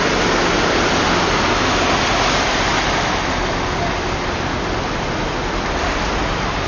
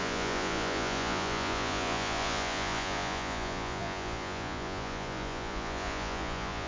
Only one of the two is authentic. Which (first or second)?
first